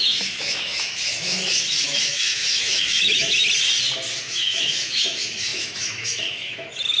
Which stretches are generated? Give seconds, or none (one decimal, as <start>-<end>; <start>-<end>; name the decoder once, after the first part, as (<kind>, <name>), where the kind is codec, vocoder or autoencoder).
0.0-3.4 (autoencoder, DAC-VAE); 4.2-7.0